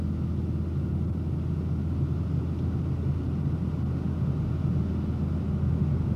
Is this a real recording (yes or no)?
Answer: yes